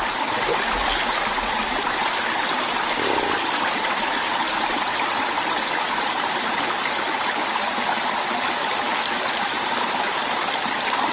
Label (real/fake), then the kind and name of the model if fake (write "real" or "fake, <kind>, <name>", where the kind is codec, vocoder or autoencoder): real